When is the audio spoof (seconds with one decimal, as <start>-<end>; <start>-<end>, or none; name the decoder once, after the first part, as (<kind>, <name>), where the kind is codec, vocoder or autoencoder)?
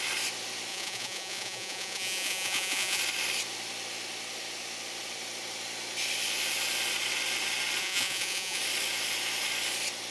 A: 0.7-3.0 (vocoder, Vocos); 7.8-8.6